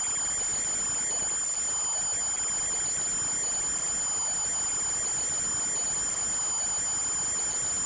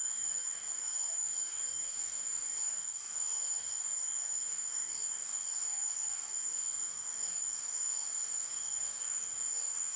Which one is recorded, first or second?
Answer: first